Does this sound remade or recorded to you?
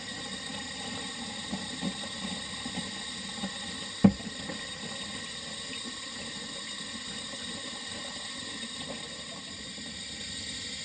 recorded